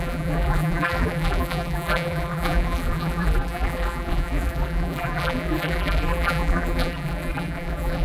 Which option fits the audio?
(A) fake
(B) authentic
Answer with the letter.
A